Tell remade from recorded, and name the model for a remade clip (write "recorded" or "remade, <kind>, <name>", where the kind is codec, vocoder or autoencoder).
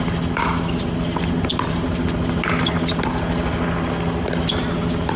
recorded